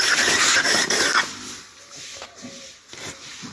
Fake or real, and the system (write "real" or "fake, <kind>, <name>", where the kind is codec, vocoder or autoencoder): real